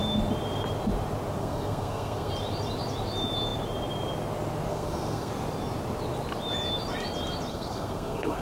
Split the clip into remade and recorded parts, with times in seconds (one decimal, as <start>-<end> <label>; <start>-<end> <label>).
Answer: 0.0-1.4 recorded; 1.4-2.3 remade; 2.3-4.7 recorded; 4.7-5.3 remade; 5.3-7.5 recorded; 7.5-8.4 remade

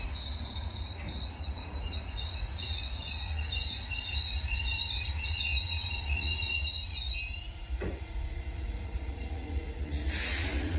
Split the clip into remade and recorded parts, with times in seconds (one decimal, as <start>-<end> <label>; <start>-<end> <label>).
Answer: 0.0-10.8 remade

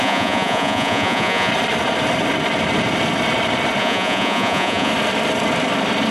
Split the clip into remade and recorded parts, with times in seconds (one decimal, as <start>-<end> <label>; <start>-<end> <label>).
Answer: 0.0-1.5 remade; 1.5-3.8 recorded; 3.8-4.9 remade; 4.9-6.1 recorded